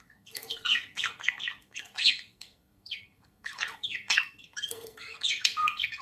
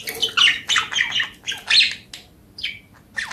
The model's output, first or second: first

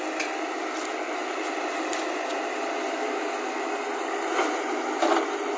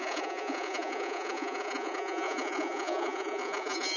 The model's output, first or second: second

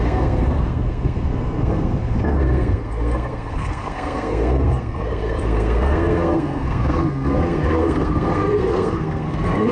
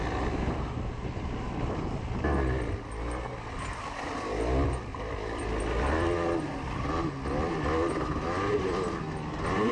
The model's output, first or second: first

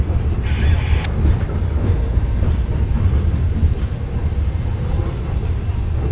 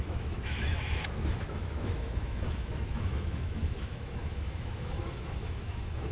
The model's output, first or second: second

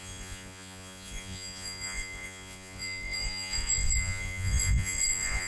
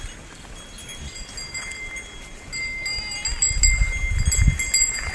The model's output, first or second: first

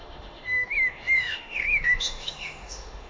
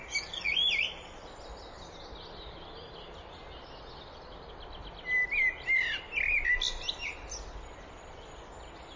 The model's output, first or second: first